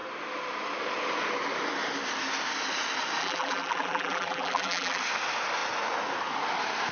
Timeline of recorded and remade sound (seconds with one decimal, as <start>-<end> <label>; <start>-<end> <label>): 0.0-3.2 recorded; 3.2-5.0 remade; 5.0-6.9 recorded